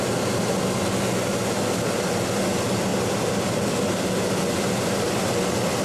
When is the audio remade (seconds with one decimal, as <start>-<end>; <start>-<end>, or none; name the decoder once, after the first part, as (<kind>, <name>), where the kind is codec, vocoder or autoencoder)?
none